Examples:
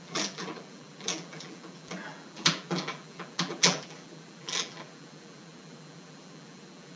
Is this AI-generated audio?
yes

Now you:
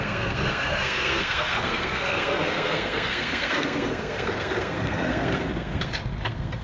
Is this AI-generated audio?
yes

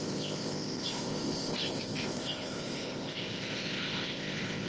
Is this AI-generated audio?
yes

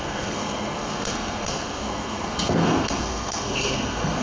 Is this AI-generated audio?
yes